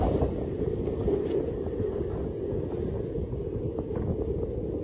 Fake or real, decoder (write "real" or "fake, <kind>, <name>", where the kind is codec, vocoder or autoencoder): real